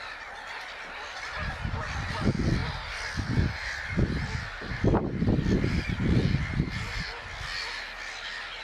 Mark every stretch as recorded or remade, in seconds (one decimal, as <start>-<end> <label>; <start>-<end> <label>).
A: 0.0-8.6 recorded

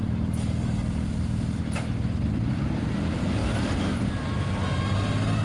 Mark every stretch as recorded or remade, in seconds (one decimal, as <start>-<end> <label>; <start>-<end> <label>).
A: 0.0-5.4 recorded

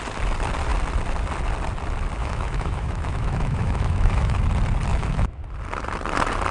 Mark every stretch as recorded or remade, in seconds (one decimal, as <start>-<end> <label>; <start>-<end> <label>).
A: 0.0-2.2 recorded; 2.2-4.4 remade; 4.4-4.9 recorded; 4.9-5.4 remade; 5.4-6.5 recorded

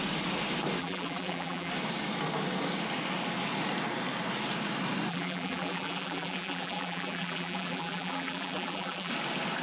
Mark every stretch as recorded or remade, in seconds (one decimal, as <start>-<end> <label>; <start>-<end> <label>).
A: 0.0-0.8 recorded; 0.8-1.7 remade; 1.7-5.1 recorded; 5.1-9.1 remade; 9.1-9.6 recorded

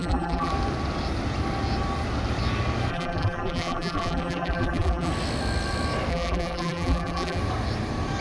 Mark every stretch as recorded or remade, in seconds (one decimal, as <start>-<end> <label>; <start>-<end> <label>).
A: 0.0-0.5 remade; 0.5-2.9 recorded; 2.9-5.1 remade; 5.1-6.1 recorded; 6.1-7.4 remade; 7.4-8.2 recorded